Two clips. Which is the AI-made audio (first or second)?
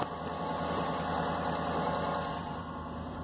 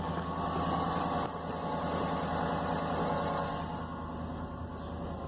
first